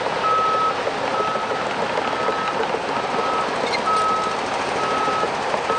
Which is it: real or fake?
real